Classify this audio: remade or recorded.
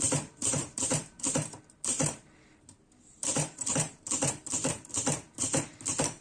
remade